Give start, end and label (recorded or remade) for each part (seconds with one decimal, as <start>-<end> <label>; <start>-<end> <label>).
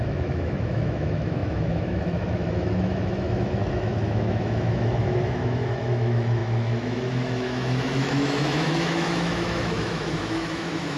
0.0-11.0 remade